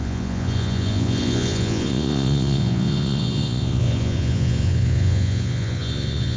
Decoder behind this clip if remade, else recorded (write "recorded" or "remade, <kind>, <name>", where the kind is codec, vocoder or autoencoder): remade, vocoder, Vocos